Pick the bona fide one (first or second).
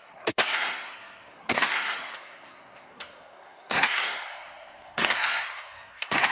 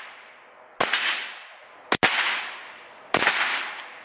second